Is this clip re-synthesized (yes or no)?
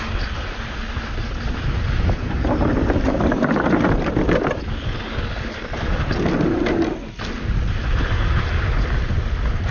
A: no